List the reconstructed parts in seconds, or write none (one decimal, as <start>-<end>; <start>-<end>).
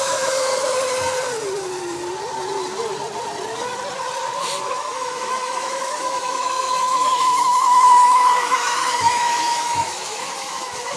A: 0.0-0.5; 4.6-11.0